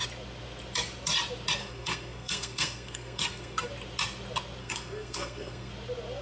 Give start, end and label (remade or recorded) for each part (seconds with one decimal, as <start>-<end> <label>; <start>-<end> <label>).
0.0-1.6 recorded; 1.6-3.7 remade; 3.7-4.6 recorded; 4.6-5.7 remade; 5.7-6.2 recorded